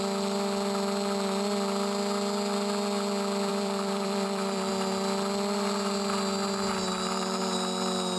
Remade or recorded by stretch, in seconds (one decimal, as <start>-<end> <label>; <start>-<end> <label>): 0.0-3.5 recorded; 3.5-4.7 remade; 4.7-6.9 recorded; 6.9-7.4 remade; 7.4-8.2 recorded